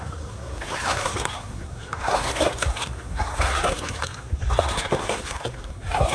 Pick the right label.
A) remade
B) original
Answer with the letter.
A